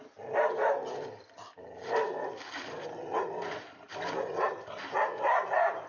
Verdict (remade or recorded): recorded